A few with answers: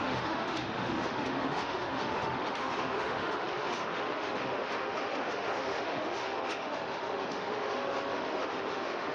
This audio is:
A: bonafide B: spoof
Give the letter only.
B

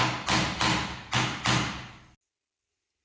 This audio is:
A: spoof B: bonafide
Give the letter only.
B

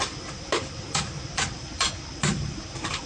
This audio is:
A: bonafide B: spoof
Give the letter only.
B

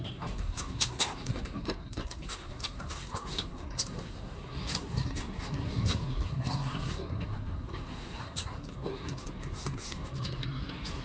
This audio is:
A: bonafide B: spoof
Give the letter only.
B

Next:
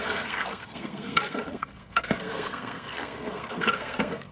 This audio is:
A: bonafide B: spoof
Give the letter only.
B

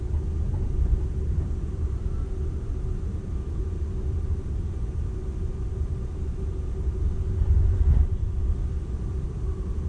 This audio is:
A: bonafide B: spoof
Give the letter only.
A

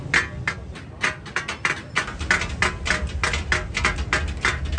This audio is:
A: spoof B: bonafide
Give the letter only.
B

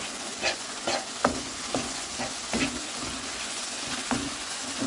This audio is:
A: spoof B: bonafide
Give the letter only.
A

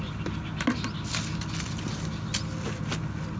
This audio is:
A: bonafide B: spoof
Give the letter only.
A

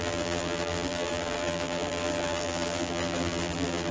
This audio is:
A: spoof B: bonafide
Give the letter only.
A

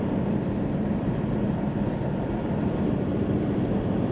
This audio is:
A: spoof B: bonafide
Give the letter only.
A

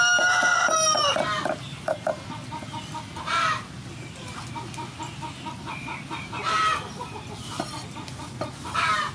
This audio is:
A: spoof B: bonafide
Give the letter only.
B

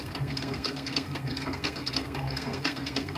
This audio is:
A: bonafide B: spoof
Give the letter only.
B